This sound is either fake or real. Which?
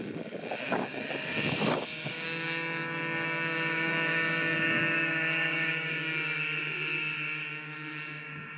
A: fake